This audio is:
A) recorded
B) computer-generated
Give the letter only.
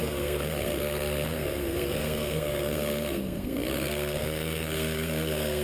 B